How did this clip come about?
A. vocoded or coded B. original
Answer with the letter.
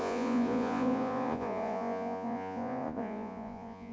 A